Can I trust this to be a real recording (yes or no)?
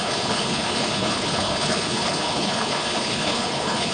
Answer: no